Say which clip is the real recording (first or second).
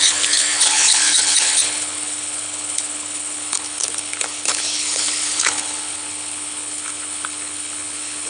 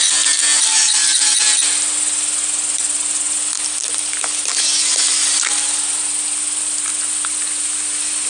second